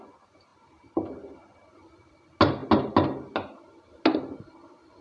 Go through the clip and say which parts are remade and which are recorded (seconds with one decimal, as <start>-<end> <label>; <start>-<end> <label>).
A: 0.0-5.0 recorded